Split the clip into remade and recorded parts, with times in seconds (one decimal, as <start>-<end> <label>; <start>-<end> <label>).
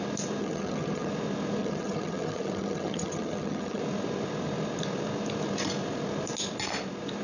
0.0-0.4 recorded; 0.4-1.1 remade; 1.1-1.6 recorded; 1.6-3.8 remade; 3.8-7.2 recorded